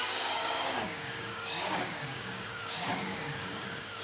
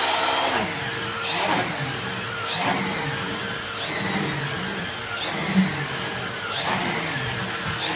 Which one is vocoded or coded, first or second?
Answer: first